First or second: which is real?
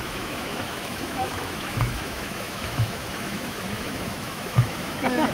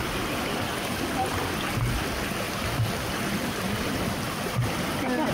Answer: second